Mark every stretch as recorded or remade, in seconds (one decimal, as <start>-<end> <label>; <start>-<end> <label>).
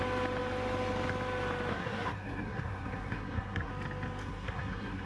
0.0-1.7 recorded; 1.7-3.7 remade; 3.7-4.2 recorded; 4.2-5.1 remade